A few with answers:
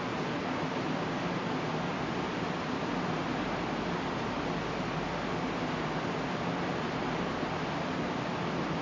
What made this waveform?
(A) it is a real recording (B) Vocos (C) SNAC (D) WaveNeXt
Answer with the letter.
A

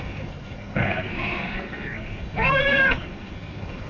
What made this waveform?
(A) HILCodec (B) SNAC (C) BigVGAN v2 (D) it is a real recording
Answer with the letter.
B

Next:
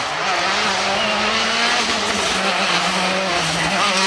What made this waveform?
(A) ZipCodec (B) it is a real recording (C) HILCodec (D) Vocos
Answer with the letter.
B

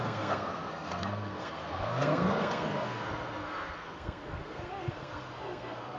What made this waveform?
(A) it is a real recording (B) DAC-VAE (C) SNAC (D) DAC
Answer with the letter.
C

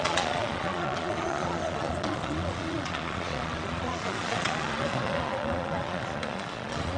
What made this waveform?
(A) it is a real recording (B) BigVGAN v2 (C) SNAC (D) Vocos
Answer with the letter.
D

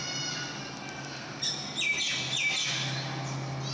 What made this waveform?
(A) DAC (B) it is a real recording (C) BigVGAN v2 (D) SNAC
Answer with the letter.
B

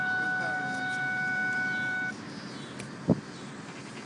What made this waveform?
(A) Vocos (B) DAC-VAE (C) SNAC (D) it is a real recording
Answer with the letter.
D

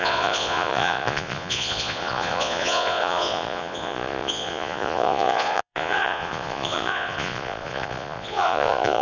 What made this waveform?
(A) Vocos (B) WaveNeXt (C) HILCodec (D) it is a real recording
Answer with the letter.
A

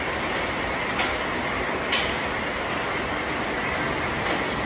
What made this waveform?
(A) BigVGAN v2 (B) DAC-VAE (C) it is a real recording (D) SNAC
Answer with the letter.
C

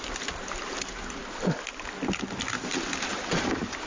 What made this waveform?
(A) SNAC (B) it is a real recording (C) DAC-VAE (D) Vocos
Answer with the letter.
B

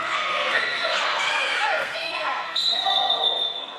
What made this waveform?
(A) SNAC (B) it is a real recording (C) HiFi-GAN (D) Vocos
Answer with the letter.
A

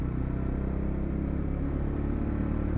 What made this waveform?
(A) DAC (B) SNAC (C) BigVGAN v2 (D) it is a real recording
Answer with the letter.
D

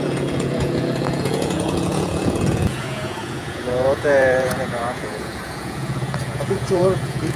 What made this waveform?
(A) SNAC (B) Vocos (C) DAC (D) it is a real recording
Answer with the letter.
B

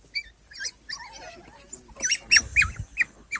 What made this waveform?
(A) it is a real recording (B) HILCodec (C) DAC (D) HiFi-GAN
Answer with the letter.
A